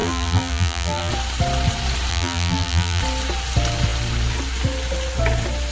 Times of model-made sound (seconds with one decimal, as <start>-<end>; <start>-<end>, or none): 0.0-1.1; 2.1-3.0

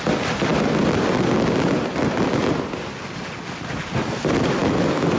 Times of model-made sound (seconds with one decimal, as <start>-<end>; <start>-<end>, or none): 4.6-5.2

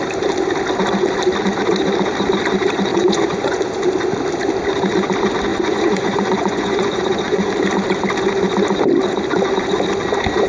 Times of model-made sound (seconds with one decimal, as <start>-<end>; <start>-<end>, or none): 2.9-3.6; 5.5-7.5

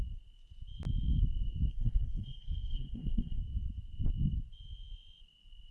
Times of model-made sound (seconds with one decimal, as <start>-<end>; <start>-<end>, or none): 1.7-3.4

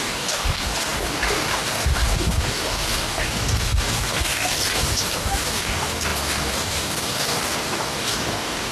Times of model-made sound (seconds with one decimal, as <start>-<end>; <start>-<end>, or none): 0.0-8.7